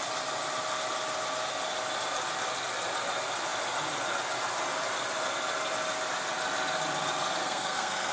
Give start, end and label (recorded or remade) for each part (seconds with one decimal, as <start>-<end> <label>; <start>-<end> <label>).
0.0-7.4 recorded; 7.4-8.1 remade